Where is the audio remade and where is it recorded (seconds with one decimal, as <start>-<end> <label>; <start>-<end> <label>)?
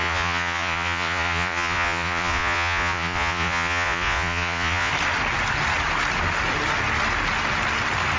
0.0-4.9 remade; 4.9-8.2 recorded